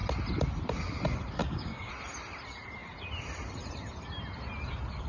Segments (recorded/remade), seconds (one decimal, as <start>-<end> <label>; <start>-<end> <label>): 0.0-1.4 recorded; 1.4-1.9 remade; 1.9-5.1 recorded